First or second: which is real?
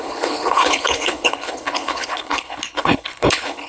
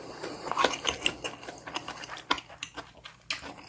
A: second